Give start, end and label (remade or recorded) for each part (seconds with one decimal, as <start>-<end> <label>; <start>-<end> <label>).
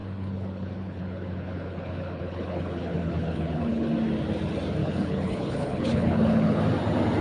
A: 0.0-3.9 remade; 3.9-4.8 recorded; 4.8-6.6 remade; 6.6-7.2 recorded